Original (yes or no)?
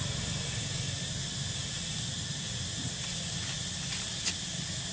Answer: yes